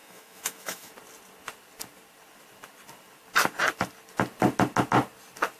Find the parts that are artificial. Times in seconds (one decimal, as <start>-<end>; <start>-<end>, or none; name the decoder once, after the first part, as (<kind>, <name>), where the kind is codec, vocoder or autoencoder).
0.0-0.9 (autoencoder, DAC-VAE)